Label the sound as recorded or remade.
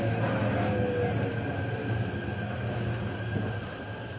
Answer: recorded